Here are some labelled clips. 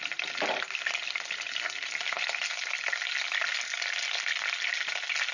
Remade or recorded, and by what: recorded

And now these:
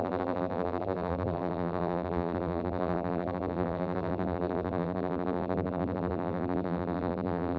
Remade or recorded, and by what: remade, vocoder, BigVGAN v2